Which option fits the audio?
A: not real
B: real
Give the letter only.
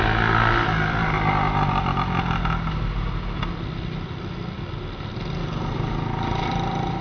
B